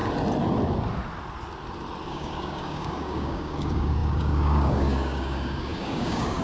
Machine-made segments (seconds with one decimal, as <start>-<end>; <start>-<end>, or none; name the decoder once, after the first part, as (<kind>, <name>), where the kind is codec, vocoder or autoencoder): 2.1-6.4 (codec, DAC)